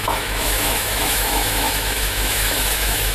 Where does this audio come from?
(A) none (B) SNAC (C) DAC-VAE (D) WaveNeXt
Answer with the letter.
C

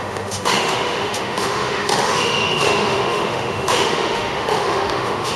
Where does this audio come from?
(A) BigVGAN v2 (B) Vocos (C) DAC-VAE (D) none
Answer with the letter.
C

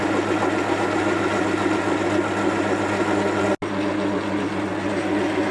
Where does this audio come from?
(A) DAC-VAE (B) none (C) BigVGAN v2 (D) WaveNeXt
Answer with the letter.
B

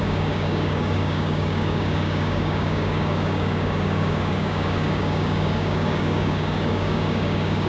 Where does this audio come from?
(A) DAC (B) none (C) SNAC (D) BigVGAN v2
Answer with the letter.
A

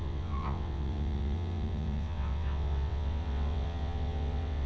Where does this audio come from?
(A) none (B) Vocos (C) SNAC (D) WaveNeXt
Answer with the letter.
D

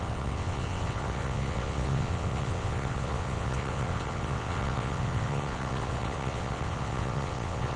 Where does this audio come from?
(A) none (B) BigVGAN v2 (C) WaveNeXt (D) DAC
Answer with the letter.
C